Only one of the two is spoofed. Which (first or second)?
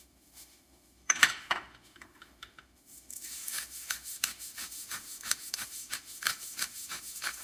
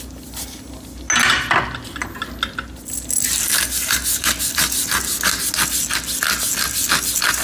first